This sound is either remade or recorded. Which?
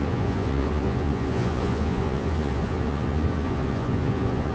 remade